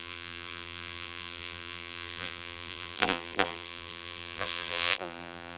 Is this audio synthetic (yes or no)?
yes